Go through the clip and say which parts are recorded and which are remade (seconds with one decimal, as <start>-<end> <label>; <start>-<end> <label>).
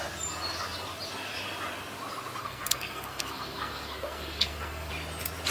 0.0-2.4 recorded; 2.4-4.9 remade; 4.9-5.5 recorded